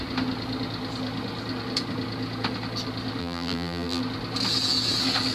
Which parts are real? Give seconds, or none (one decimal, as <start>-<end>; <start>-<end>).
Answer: 0.0-3.2; 4.0-5.3